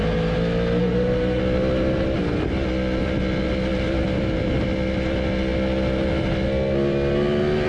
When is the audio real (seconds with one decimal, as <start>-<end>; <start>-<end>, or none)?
0.0-0.8; 1.4-7.7